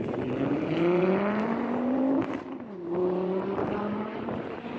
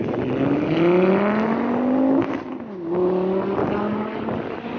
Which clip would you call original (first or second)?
second